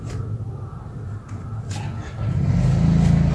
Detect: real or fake real